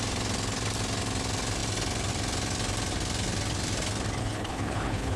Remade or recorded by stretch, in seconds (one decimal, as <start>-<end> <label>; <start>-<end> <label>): 0.0-4.2 recorded; 4.2-5.2 remade